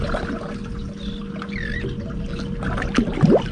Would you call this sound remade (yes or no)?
no